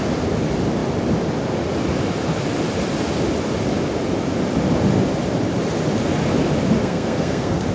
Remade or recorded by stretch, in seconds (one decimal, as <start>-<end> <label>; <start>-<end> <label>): 0.0-6.8 recorded; 6.8-7.7 remade